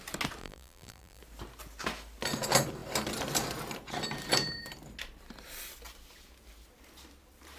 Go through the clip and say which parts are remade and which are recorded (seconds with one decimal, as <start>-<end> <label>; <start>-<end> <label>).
0.0-0.4 recorded; 0.4-1.2 remade; 1.2-7.6 recorded